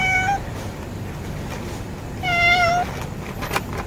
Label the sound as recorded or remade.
recorded